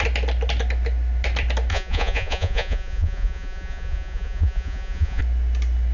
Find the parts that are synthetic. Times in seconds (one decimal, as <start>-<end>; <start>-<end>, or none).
1.7-5.2